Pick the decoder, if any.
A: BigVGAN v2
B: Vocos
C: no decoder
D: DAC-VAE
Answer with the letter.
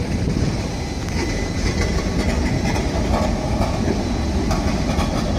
C